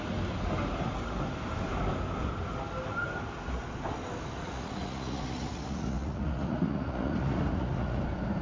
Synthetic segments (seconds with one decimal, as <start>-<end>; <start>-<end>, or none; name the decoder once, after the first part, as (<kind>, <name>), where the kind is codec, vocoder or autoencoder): 4.4-8.0 (vocoder, Vocos)